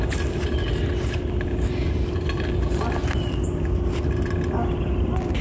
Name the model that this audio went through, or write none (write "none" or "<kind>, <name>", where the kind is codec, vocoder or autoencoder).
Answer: none